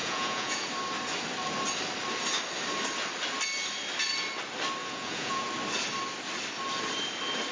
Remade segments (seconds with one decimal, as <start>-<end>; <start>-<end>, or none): 0.0-0.7; 4.8-5.5